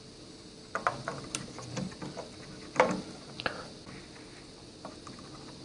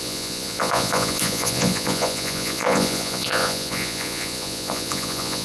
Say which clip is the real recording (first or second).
first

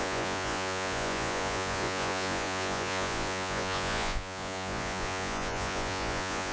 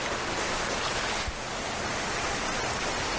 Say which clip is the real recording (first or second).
second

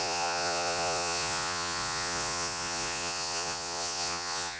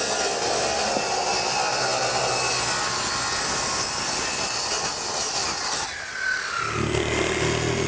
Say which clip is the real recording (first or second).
second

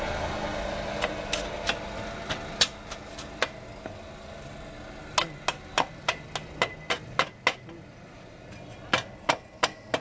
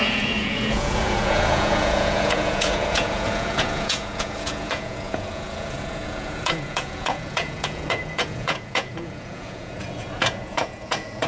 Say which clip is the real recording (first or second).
first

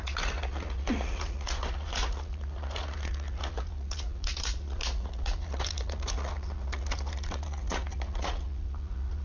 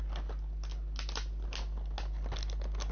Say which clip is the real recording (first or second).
second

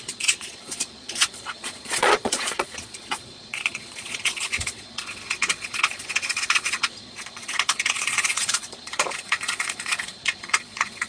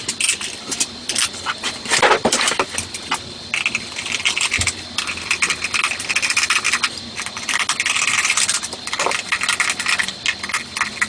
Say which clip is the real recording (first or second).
second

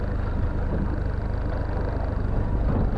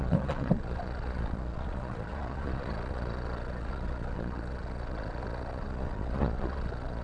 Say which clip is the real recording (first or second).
first